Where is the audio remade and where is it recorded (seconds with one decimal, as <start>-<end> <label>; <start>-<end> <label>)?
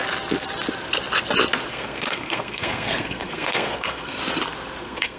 0.0-1.7 recorded; 1.7-4.2 remade; 4.2-4.8 recorded; 4.8-5.2 remade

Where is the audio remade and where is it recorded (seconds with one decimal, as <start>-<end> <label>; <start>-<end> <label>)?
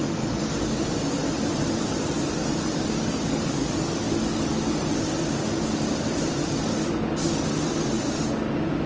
0.0-8.9 recorded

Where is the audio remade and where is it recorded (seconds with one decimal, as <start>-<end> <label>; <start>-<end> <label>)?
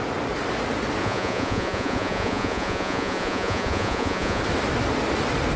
0.0-1.0 recorded; 1.0-4.4 remade; 4.4-5.6 recorded